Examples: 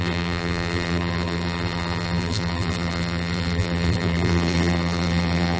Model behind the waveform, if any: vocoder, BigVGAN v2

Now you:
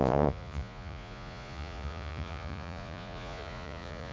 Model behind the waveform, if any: vocoder, Vocos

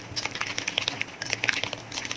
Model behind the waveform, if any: none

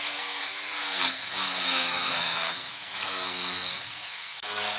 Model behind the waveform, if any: codec, SNAC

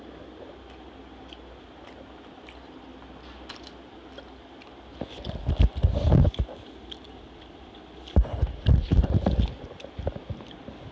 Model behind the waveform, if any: none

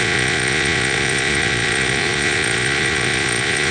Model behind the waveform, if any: vocoder, Vocos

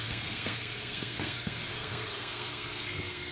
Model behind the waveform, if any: codec, SNAC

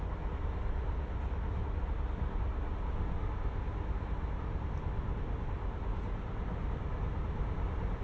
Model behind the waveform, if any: none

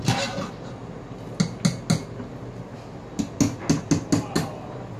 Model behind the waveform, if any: none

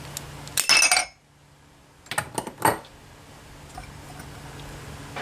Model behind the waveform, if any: none